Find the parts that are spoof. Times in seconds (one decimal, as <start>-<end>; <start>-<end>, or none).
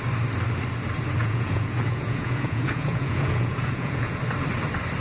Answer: 1.2-4.2